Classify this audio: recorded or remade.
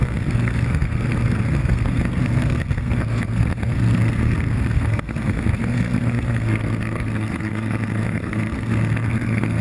remade